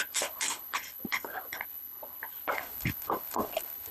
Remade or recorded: remade